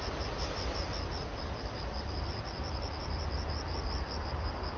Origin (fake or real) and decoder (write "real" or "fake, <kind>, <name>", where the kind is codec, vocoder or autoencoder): real